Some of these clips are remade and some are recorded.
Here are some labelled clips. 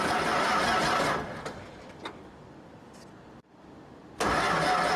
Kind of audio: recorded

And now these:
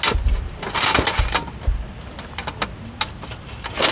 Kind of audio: recorded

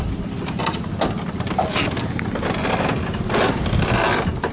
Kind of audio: recorded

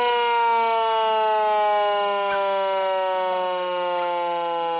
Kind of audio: recorded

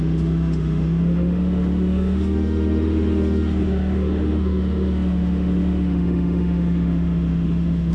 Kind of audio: remade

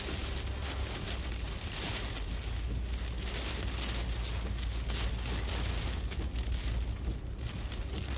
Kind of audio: recorded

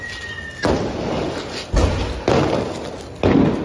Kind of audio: recorded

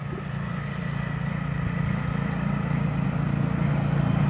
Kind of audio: recorded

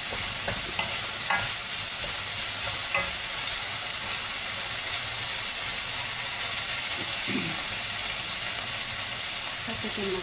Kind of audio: recorded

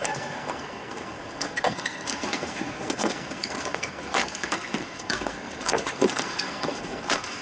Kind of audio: remade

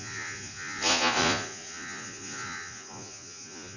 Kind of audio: remade